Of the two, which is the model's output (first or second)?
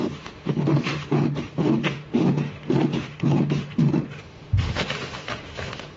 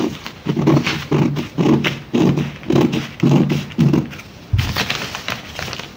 first